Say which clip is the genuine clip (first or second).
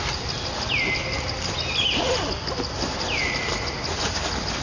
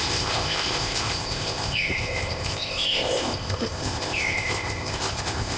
first